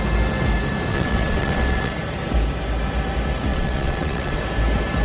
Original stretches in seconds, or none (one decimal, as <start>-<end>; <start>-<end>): 0.0-0.9; 1.9-3.5; 4.4-5.0